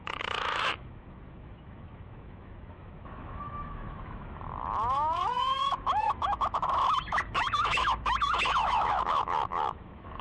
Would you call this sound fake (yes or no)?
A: yes